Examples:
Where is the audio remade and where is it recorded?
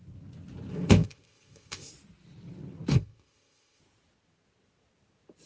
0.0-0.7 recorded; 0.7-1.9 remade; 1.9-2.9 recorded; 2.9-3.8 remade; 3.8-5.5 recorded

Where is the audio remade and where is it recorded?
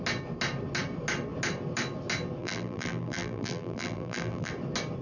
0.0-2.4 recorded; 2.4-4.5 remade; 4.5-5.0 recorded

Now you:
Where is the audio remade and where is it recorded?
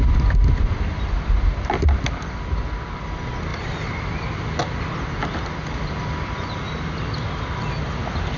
0.0-8.4 recorded